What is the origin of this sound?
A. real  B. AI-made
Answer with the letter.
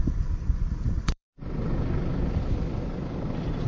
B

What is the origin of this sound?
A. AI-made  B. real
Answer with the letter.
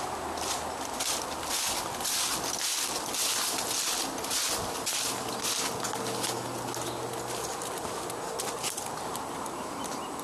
B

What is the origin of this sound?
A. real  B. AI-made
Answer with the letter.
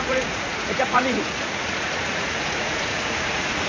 B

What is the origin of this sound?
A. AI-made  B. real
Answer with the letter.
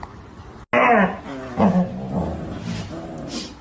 B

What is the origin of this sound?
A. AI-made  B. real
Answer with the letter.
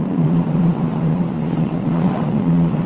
A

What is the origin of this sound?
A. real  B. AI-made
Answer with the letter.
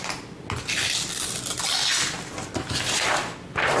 A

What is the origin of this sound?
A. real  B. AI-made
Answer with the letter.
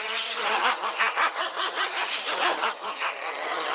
B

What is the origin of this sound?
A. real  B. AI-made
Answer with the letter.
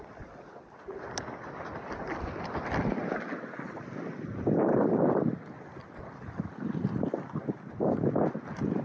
A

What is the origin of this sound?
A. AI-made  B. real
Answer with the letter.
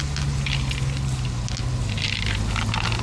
B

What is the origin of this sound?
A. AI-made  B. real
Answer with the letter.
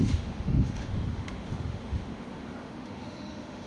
A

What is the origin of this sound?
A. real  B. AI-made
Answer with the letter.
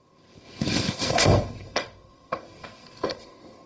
B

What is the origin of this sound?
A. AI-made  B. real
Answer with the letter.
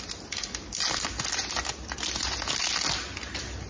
B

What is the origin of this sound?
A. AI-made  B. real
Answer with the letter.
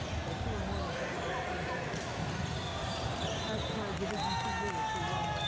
B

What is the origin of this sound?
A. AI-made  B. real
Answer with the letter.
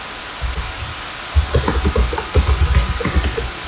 B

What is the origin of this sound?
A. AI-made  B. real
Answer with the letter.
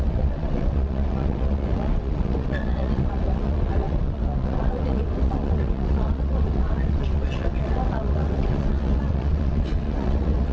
A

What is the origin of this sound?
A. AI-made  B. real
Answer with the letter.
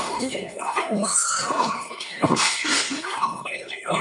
A